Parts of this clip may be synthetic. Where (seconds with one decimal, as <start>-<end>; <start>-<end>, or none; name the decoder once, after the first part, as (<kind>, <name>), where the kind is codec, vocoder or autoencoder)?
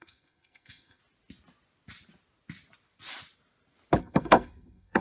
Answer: 0.0-1.0 (codec, SNAC); 4.0-5.0